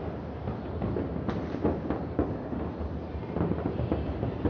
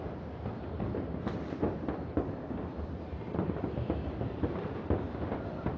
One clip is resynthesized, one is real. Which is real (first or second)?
first